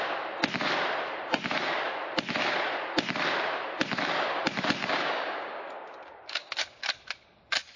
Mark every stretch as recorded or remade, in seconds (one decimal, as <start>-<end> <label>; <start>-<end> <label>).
0.0-4.8 recorded; 4.8-6.8 remade; 6.8-7.8 recorded